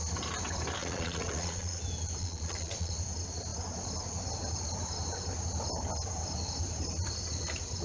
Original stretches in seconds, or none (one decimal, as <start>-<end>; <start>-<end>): 0.0-0.8; 1.8-2.2; 2.9-7.8